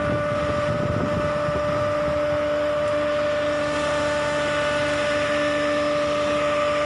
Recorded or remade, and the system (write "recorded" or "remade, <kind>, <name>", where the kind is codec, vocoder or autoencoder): recorded